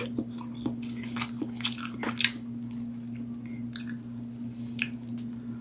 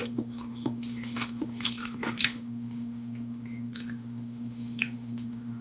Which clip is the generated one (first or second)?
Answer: second